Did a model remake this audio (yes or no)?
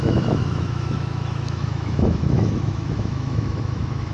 yes